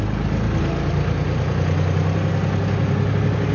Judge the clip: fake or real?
real